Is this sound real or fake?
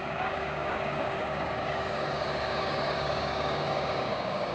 fake